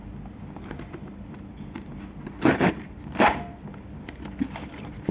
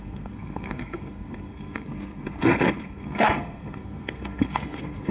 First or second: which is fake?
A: second